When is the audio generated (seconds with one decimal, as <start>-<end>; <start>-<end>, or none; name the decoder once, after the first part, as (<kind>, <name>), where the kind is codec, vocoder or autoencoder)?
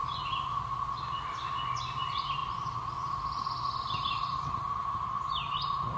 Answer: none